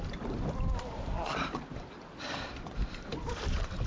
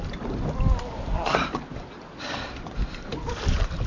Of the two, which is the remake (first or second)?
first